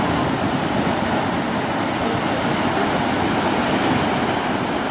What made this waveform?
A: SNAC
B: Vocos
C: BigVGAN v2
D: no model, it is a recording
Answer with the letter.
D